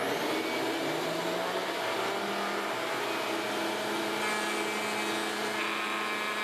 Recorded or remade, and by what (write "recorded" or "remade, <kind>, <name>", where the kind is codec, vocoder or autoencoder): recorded